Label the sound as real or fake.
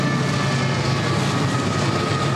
real